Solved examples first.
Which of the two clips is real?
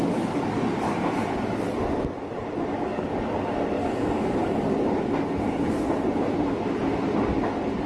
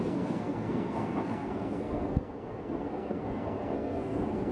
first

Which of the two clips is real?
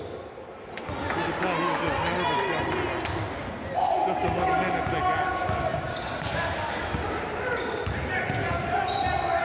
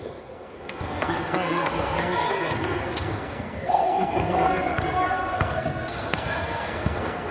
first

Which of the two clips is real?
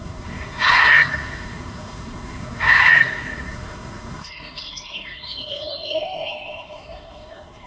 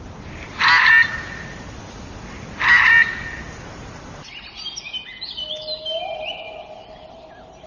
second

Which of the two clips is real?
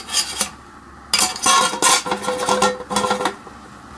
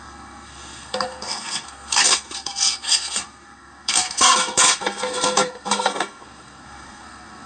first